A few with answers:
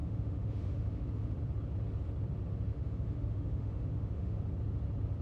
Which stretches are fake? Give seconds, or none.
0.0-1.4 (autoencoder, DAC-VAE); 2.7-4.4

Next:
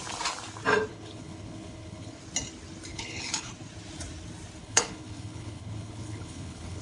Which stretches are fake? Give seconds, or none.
0.9-2.2 (codec, HILCodec); 2.9-3.5; 4.6-6.8

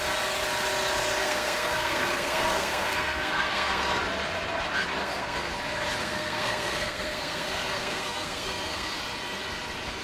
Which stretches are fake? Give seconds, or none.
1.2-4.0 (codec, SNAC); 5.0-5.5; 6.0-9.0

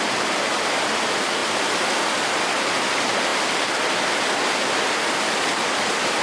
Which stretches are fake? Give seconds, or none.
none